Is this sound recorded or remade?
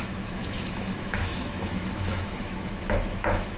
remade